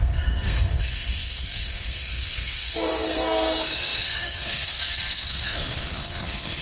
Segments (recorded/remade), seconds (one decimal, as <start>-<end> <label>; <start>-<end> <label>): 0.0-6.6 remade